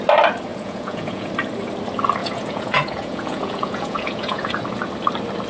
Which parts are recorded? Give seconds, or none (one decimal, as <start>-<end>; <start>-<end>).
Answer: 0.0-0.5; 1.3-2.2; 4.5-5.5